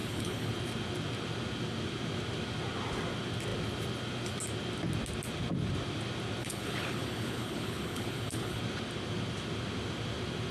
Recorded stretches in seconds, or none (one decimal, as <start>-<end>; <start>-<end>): 0.5-6.4; 8.6-10.5